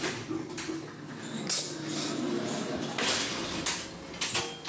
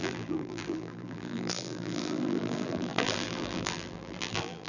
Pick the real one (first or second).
first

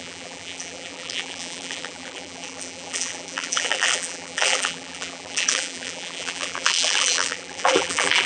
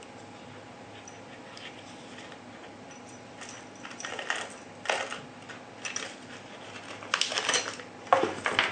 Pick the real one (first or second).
second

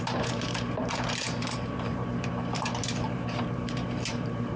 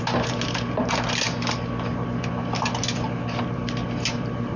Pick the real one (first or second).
second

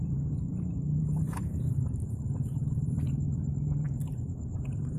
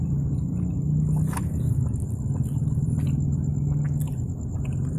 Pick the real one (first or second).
second